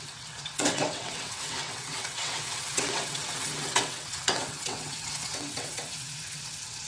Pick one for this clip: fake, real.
fake